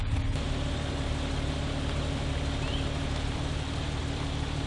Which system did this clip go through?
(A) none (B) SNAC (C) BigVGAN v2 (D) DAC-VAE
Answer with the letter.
A